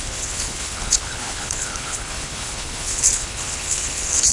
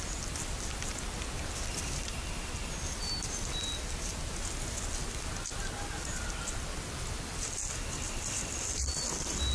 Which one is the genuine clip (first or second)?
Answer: second